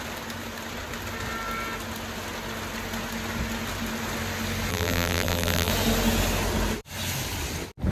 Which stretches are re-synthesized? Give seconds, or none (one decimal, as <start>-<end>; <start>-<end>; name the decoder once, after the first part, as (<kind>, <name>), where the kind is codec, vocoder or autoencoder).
4.7-5.7 (vocoder, BigVGAN v2)